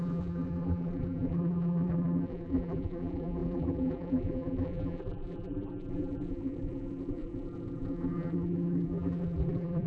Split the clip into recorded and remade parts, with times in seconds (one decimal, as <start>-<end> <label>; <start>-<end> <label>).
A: 0.0-9.9 remade